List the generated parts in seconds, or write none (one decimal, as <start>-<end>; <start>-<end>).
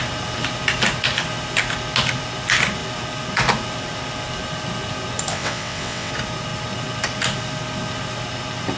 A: 5.3-6.1